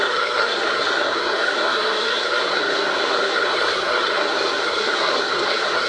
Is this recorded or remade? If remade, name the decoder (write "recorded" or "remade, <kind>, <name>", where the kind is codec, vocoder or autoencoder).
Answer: remade, codec, SNAC